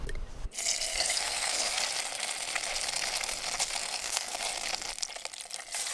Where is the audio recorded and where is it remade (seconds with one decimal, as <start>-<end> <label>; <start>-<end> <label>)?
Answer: 0.0-0.9 recorded; 0.9-1.8 remade; 1.8-3.8 recorded; 3.8-4.4 remade; 4.4-5.9 recorded